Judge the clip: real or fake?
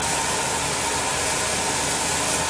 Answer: real